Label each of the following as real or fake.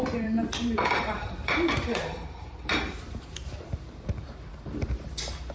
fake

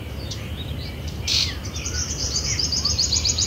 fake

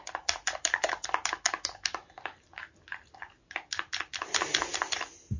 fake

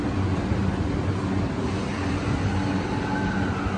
real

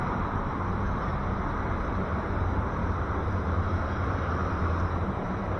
fake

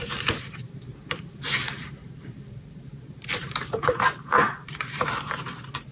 fake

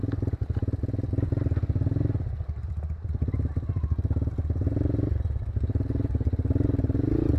real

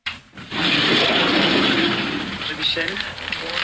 fake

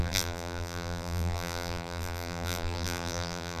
fake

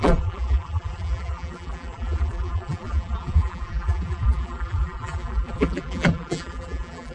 fake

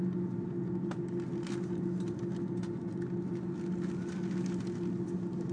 real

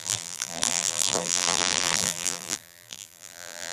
fake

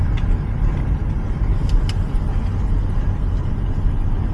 real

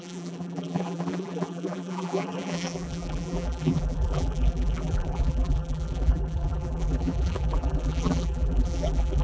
fake